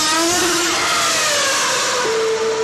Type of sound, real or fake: real